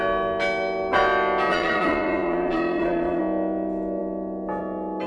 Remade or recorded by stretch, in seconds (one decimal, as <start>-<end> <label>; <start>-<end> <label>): 0.0-1.5 recorded; 1.5-3.2 remade; 3.2-5.1 recorded